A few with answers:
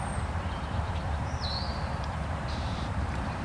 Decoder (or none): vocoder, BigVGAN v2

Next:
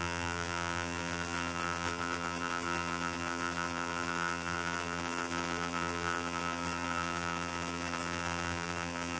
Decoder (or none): vocoder, BigVGAN v2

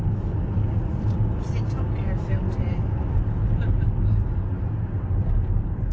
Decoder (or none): none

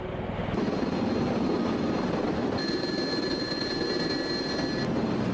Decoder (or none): none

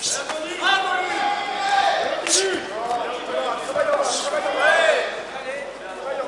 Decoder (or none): none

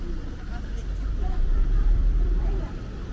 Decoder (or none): vocoder, BigVGAN v2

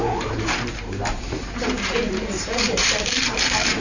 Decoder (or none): vocoder, BigVGAN v2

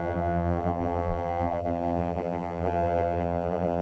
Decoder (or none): vocoder, BigVGAN v2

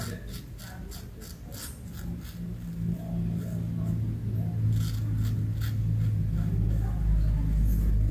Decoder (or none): none